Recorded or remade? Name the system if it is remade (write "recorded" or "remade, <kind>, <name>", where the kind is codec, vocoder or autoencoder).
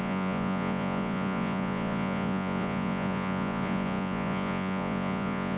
remade, vocoder, Vocos